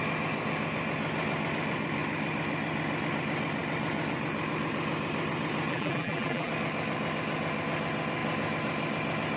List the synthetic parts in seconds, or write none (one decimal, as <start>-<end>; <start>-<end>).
5.7-6.5